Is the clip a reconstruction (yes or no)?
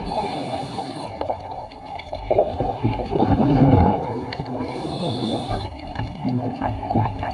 yes